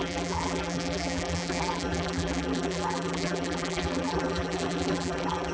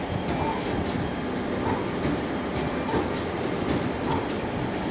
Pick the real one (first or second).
second